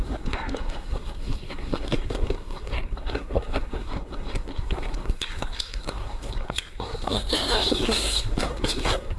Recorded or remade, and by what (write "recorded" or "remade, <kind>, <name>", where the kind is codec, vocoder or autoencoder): remade, codec, SNAC